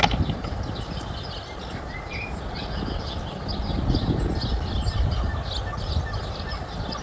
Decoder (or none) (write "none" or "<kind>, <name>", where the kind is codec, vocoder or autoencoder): none